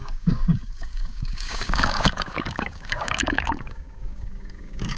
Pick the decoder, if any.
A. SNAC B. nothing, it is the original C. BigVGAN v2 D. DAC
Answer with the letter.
D